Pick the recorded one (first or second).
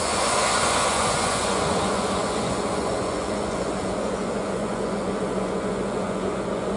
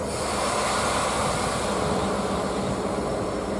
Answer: second